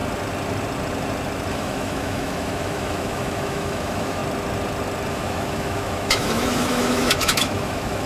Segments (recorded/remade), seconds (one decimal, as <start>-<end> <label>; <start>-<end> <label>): 0.0-1.5 recorded; 1.5-4.2 remade; 4.2-5.1 recorded; 5.1-8.1 remade